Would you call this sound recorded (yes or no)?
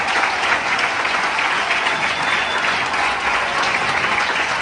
no